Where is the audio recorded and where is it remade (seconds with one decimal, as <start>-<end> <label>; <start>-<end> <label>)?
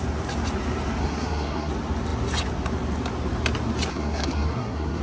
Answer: 0.0-1.0 recorded; 1.0-1.7 remade; 1.7-3.9 recorded; 3.9-5.0 remade